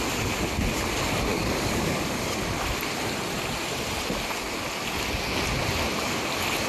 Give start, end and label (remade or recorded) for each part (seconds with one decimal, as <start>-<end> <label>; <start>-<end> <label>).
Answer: 0.0-1.3 recorded; 1.3-2.3 remade; 2.3-6.7 recorded